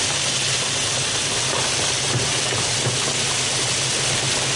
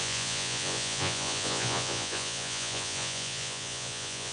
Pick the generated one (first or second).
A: second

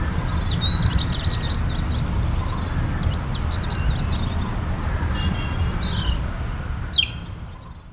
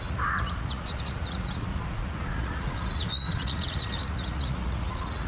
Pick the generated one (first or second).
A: second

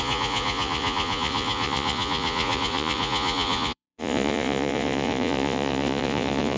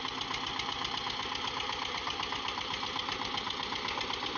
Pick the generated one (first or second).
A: first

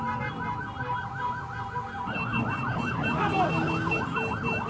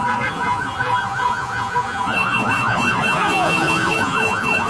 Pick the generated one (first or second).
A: second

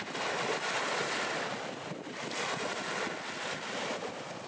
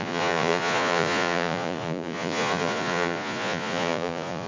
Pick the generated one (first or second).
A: second